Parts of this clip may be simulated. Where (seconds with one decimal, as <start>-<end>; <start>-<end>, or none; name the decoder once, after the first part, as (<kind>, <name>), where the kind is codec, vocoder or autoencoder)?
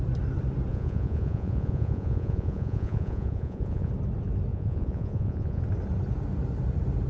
0.7-3.9 (vocoder, Vocos); 4.5-5.6